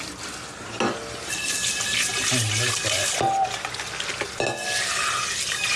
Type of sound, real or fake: real